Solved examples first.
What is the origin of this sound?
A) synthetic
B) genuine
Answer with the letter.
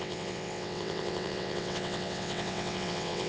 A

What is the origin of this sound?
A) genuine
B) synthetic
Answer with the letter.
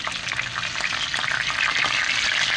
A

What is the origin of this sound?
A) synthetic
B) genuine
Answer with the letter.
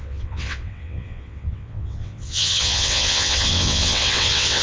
A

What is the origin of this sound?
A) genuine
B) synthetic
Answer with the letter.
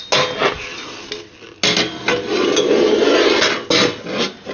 A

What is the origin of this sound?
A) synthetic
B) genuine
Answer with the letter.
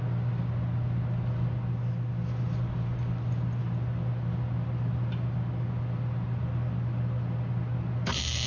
B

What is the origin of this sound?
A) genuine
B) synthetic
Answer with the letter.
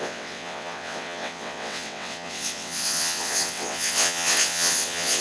B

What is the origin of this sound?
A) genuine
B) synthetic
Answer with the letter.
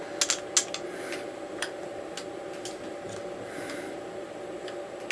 A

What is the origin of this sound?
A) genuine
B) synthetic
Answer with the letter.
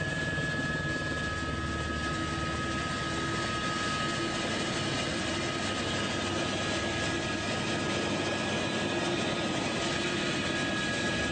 A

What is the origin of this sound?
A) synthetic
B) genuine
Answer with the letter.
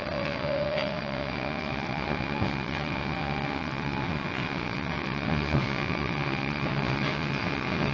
A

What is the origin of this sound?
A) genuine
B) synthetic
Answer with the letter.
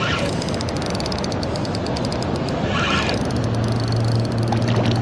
A